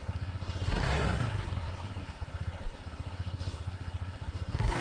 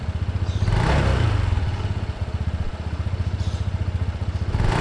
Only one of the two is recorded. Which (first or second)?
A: second